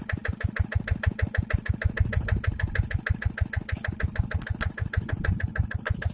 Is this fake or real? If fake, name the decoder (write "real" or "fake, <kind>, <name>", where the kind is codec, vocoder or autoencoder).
real